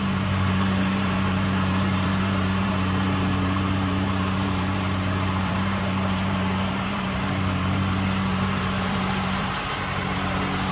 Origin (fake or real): fake